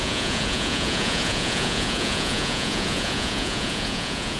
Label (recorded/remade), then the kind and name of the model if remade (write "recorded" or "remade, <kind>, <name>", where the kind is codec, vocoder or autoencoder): remade, vocoder, Vocos